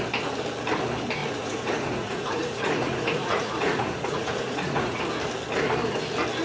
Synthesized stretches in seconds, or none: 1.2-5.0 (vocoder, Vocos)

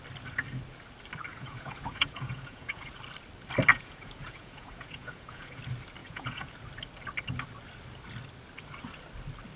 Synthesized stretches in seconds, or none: 1.3-2.9 (vocoder, Vocos); 3.7-5.6; 6.0-6.5

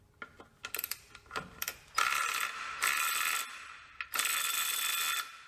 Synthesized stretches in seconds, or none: none

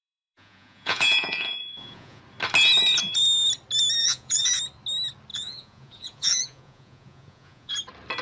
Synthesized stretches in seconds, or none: 0.0-2.2 (vocoder, Vocos); 4.0-4.5; 5.3-7.7

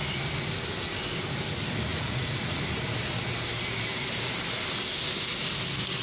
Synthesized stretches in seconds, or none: 1.9-2.6 (vocoder, Vocos)